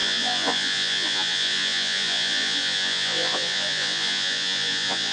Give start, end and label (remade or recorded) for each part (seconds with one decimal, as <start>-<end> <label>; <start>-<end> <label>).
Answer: 0.0-5.1 remade